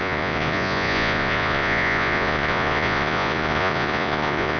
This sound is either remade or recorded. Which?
remade